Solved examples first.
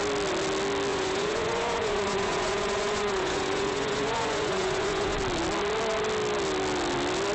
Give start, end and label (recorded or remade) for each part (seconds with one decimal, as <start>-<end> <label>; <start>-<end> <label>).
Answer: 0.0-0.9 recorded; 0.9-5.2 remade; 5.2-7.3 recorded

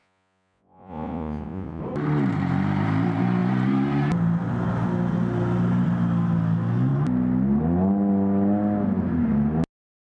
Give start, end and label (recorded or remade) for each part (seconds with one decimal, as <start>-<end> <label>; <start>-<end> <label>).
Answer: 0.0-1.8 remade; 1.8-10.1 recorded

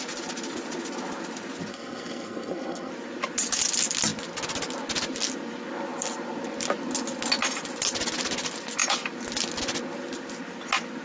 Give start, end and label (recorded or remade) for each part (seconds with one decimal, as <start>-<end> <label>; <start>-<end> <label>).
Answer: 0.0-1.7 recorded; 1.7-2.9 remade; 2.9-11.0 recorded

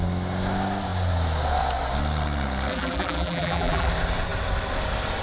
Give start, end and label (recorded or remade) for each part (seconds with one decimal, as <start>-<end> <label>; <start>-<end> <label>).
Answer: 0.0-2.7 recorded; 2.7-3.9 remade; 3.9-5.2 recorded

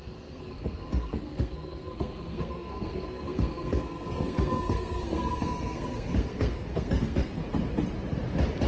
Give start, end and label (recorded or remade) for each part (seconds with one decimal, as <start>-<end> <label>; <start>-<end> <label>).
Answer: 0.0-7.4 remade; 7.4-8.7 recorded

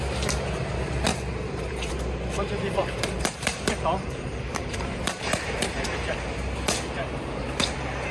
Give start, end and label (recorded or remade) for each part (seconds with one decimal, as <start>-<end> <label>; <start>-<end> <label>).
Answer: 0.0-1.1 recorded; 1.1-1.9 remade; 1.9-2.8 recorded; 2.8-8.1 remade